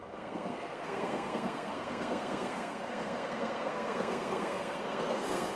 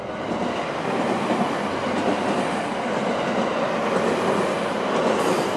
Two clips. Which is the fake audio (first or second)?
first